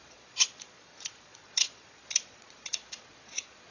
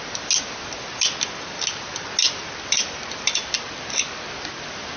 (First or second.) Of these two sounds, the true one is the second